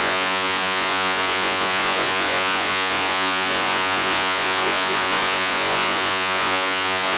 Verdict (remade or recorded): remade